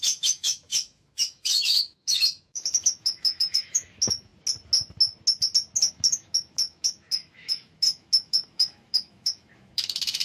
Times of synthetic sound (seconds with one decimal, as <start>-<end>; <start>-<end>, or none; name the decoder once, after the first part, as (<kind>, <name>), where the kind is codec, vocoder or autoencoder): 0.0-4.3 (autoencoder, DAC-VAE); 5.9-10.2